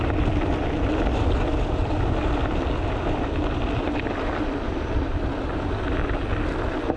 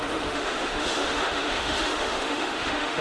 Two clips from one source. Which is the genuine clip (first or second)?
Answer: first